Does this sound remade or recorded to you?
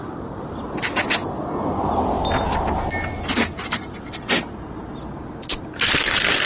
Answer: recorded